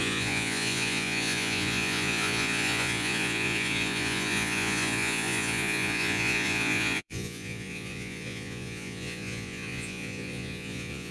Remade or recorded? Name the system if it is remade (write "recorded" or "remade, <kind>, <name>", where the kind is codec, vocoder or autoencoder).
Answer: remade, vocoder, Vocos